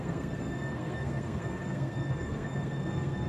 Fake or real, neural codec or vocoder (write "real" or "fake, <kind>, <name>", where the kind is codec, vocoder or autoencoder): fake, codec, SNAC